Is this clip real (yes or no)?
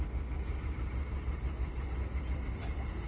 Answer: yes